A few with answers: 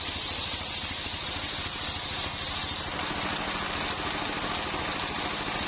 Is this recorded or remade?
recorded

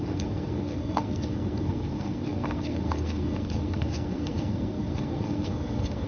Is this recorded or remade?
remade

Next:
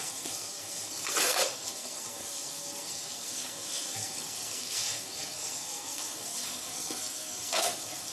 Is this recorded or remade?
remade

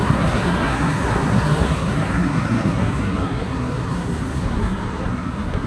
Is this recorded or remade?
remade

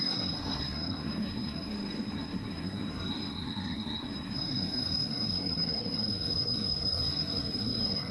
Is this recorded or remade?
remade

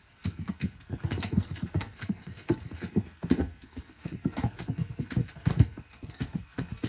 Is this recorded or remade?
remade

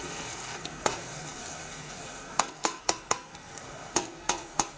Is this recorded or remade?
remade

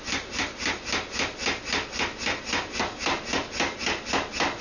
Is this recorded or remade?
recorded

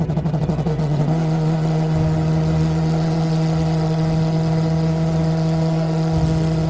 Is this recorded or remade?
recorded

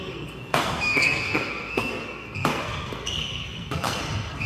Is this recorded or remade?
remade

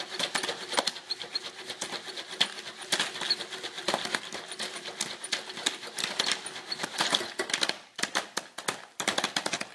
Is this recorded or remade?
recorded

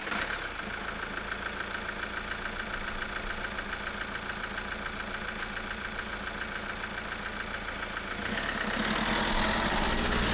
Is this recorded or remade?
recorded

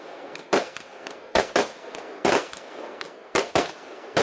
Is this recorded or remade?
remade